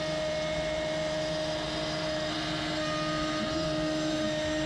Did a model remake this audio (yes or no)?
no